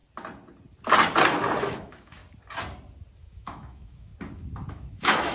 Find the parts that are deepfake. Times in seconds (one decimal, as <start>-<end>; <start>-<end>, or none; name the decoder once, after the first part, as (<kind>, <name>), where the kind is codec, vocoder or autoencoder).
1.6-2.2 (autoencoder, DAC-VAE); 3.2-4.1; 4.7-5.3